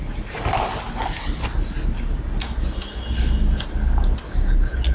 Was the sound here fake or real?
real